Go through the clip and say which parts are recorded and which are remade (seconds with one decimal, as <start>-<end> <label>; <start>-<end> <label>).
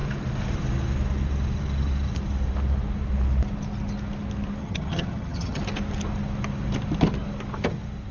0.0-4.6 recorded; 4.6-5.6 remade; 5.6-8.1 recorded